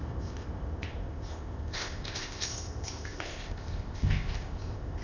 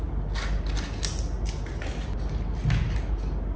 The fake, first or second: first